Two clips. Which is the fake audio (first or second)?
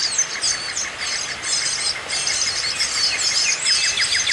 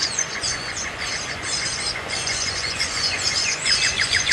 second